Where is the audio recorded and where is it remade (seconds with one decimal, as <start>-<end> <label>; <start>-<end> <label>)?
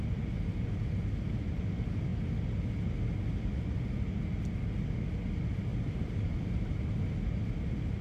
0.0-5.7 recorded; 5.7-6.9 remade; 6.9-8.0 recorded